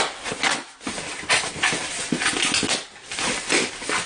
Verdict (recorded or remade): recorded